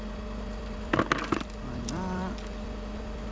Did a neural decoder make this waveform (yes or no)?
no